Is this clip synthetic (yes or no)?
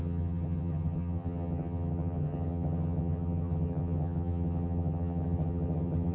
yes